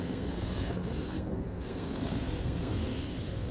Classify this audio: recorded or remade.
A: remade